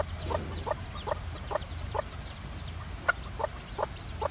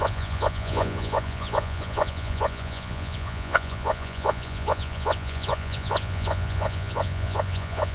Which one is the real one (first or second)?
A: first